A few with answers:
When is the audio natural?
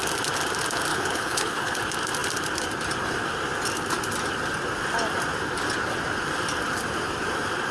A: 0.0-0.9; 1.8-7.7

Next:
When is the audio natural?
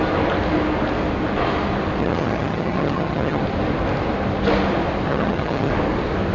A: 0.0-2.0; 3.4-5.1; 5.7-6.3